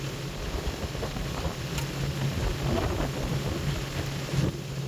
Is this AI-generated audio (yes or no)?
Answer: no